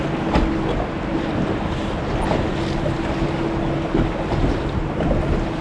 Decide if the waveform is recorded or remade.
recorded